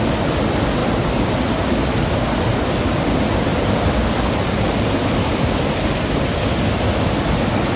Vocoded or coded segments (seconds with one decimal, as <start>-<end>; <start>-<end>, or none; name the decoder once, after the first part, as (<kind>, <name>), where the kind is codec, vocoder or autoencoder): none